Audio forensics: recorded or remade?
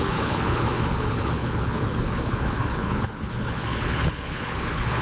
remade